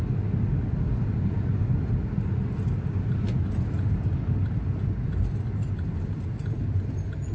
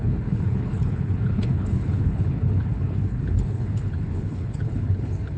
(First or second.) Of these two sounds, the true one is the first